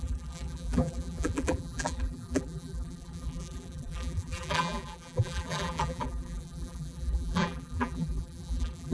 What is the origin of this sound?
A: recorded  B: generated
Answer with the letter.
B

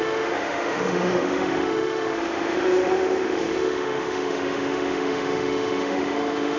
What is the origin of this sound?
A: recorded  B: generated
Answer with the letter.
B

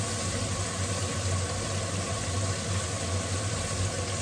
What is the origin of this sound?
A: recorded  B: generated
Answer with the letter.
A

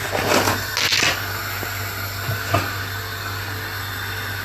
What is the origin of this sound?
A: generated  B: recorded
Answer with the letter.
B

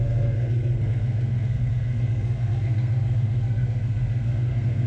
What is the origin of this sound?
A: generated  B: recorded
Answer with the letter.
A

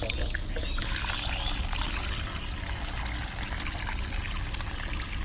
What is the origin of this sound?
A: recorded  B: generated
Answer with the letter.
A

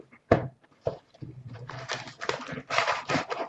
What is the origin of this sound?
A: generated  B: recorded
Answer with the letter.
A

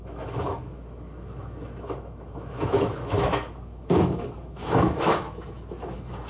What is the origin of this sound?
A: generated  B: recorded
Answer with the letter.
A